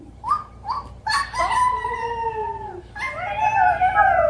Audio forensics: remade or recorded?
remade